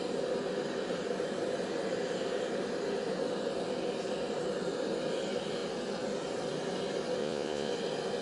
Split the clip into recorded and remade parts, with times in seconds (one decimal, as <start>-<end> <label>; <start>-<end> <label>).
0.0-7.2 recorded; 7.2-7.7 remade; 7.7-8.2 recorded